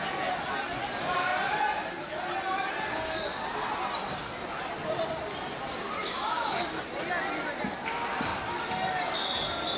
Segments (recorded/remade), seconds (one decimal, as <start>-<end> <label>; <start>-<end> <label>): 0.0-6.0 recorded; 6.0-6.8 remade; 6.8-9.8 recorded